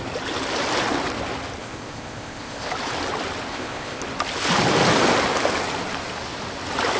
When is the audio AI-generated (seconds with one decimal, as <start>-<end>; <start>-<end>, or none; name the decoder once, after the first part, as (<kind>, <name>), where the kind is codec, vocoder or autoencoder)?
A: 1.6-2.7 (codec, ZipCodec); 3.5-4.0